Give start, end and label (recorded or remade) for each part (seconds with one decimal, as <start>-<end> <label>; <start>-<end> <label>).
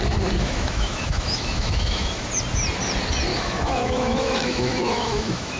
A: 0.0-0.4 recorded; 0.4-2.3 remade; 2.3-3.3 recorded; 3.3-5.6 remade